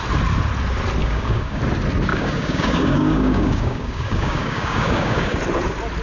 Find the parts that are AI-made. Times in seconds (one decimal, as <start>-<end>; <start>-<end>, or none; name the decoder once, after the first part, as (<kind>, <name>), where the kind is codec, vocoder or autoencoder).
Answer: 1.0-1.6 (codec, DAC); 2.1-5.4